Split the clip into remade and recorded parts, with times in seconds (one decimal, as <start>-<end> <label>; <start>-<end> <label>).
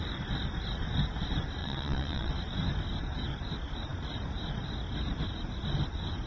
0.0-1.6 recorded; 1.6-2.3 remade; 2.3-6.3 recorded